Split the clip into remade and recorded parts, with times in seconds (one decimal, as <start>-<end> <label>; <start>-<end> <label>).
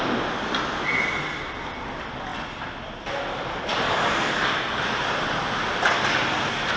0.0-6.8 recorded